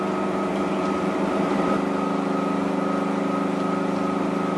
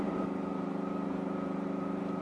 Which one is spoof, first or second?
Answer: second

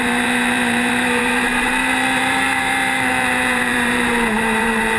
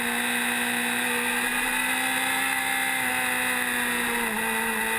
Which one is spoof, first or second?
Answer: first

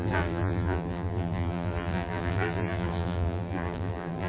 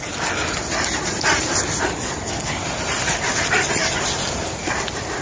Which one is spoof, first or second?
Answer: first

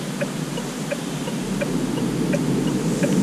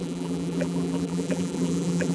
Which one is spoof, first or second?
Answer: second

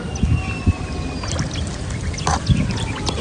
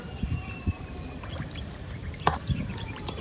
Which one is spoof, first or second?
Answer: second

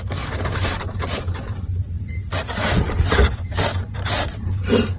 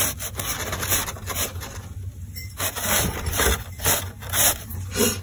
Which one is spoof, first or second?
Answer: first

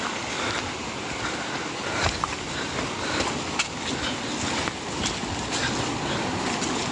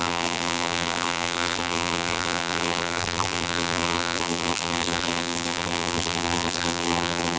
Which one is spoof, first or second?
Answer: second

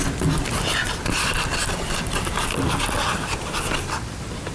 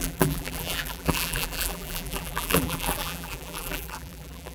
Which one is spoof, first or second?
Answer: second